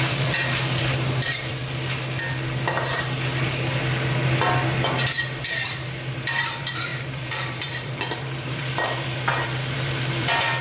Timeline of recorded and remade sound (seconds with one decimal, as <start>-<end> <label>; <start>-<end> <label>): 0.0-1.6 remade; 1.6-5.4 recorded; 5.4-10.6 remade